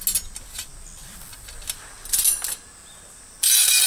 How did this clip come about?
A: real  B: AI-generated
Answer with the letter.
A